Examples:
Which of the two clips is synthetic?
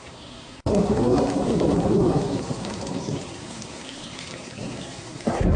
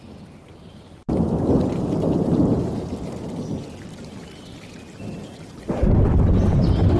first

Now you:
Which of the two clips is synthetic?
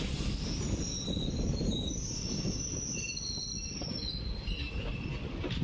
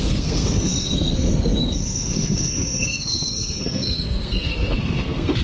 second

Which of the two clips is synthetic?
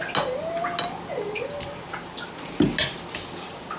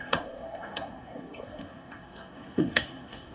second